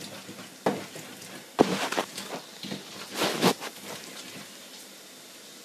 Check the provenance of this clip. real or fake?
real